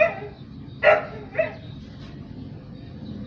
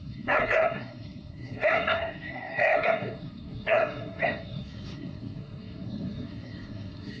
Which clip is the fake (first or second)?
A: second